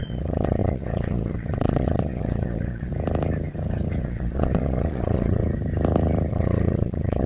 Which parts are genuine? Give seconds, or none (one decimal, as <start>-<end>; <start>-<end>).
2.9-4.0; 5.4-6.3